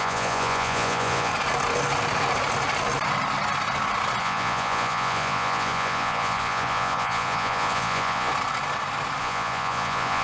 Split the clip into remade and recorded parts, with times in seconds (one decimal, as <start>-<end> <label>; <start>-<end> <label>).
0.0-1.3 remade; 1.3-4.2 recorded; 4.2-8.3 remade; 8.3-9.2 recorded; 9.2-10.2 remade